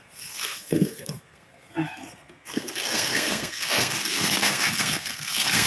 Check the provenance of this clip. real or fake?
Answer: fake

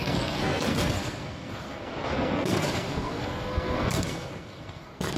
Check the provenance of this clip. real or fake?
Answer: fake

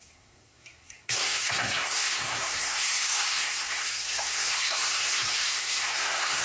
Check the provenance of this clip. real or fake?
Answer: fake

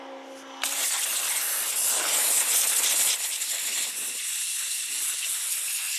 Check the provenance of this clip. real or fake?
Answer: real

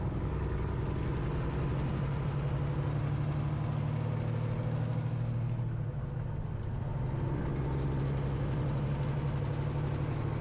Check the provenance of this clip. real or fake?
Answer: real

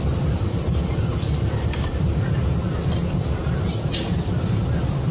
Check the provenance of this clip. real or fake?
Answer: real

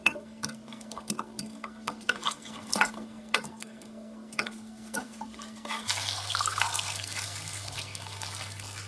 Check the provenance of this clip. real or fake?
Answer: fake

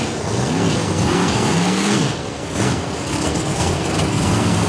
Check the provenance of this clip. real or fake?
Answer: fake